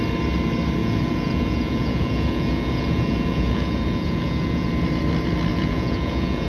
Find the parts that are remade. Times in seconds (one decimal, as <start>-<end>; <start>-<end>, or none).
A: 0.8-4.7; 5.5-6.5